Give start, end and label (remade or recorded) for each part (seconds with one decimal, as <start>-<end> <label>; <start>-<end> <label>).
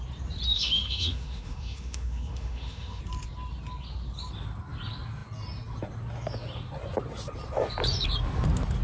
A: 0.0-0.5 recorded; 0.5-3.0 remade; 3.0-8.8 recorded